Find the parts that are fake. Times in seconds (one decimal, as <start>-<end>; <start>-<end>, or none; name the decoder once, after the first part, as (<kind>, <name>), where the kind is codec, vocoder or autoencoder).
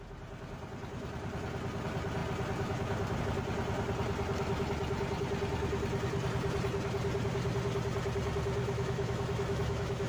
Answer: 8.6-10.1 (autoencoder, DAC-VAE)